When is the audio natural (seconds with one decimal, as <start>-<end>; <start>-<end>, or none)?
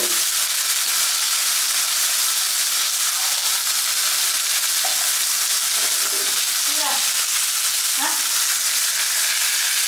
0.0-9.9